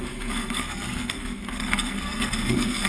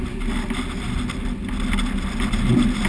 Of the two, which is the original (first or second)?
second